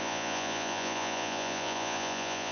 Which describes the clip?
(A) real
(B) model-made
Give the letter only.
B